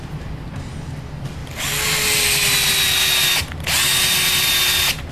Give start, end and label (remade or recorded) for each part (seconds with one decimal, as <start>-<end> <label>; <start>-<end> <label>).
0.0-5.1 recorded